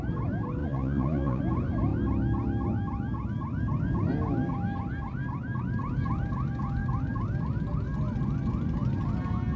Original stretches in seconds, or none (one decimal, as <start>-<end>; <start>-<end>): 0.0-0.6; 1.4-9.6